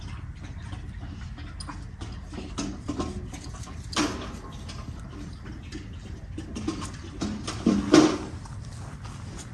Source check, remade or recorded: recorded